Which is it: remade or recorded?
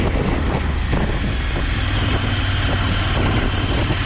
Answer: recorded